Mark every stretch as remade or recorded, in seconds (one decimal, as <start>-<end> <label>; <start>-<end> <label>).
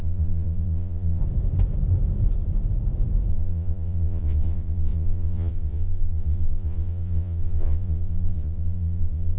0.0-1.2 remade; 1.2-3.3 recorded; 3.3-9.4 remade